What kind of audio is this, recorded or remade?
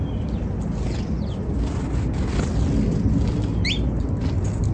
recorded